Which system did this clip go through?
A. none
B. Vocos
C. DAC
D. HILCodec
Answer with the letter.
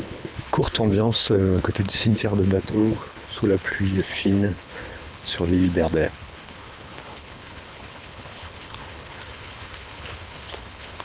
D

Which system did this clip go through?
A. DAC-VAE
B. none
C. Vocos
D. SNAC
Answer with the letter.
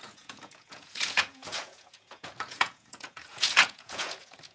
C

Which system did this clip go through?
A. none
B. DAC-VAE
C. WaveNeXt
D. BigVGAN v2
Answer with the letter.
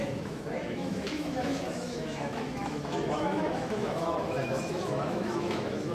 B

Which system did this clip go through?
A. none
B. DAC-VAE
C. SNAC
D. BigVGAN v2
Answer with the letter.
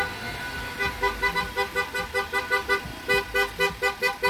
A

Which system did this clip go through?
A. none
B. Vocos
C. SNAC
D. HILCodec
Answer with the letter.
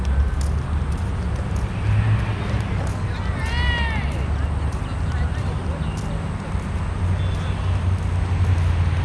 A